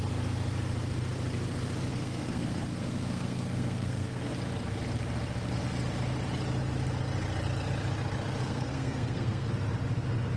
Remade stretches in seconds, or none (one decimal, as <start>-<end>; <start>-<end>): 1.9-4.3; 8.4-9.5